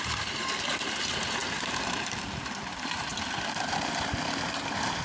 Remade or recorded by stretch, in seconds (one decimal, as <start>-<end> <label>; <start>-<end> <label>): 0.0-3.1 remade; 3.1-3.9 recorded; 3.9-5.0 remade